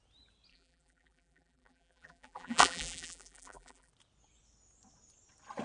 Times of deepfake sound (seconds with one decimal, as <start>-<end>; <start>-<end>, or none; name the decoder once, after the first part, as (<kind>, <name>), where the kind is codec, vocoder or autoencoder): 0.5-3.9 (vocoder, BigVGAN v2)